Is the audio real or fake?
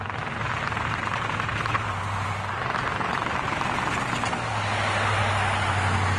real